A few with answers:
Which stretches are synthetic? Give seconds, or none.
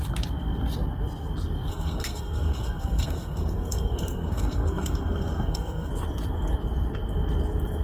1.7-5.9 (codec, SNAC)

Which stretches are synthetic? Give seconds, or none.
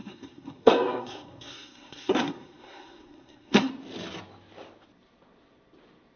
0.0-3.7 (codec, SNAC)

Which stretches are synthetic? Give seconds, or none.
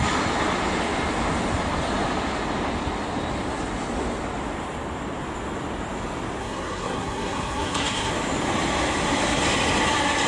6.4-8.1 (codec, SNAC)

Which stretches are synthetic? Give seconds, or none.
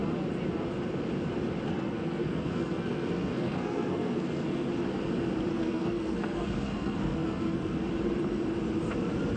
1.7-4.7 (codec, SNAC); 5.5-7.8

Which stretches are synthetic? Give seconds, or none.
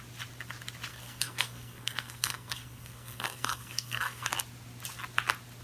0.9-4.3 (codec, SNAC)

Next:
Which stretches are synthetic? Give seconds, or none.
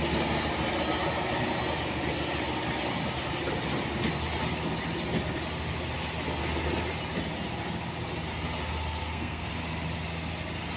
9.0-9.5 (codec, SNAC)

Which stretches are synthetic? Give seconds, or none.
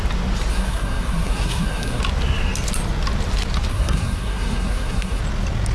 0.5-2.0 (codec, SNAC); 3.7-5.2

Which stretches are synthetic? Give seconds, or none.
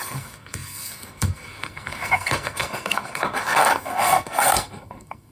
0.0-5.3 (codec, SNAC)